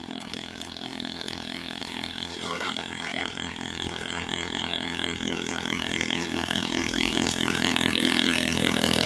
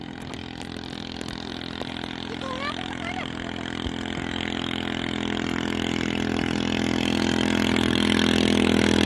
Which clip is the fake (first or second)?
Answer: first